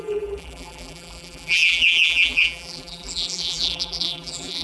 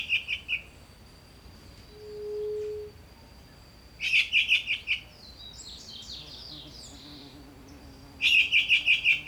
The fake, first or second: first